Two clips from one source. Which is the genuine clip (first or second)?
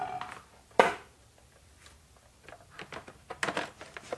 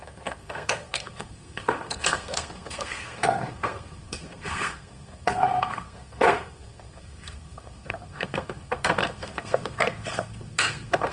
first